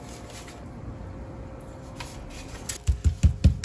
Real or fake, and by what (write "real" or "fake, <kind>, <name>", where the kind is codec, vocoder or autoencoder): real